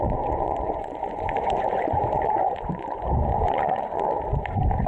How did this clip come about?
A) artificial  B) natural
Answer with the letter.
A